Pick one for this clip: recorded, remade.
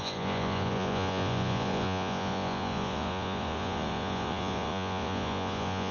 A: remade